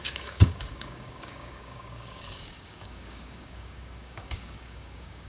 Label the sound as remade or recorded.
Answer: remade